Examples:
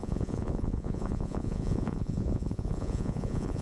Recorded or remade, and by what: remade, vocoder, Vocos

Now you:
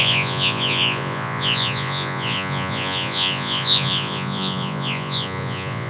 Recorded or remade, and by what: remade, vocoder, Vocos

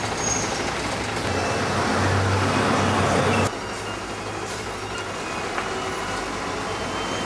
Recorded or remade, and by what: recorded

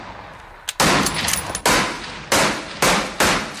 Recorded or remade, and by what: recorded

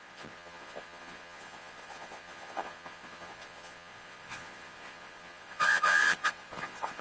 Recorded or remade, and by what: remade, vocoder, Vocos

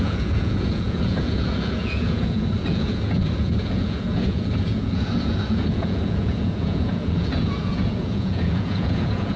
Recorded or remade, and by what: remade, vocoder, Vocos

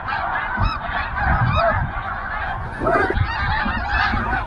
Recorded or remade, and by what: remade, vocoder, Vocos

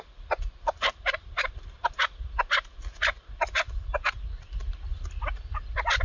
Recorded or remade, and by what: recorded